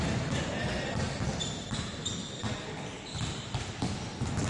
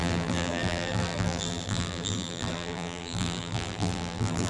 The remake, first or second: second